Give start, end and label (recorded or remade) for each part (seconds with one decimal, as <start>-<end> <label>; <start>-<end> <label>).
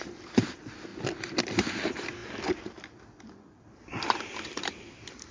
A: 0.0-5.3 remade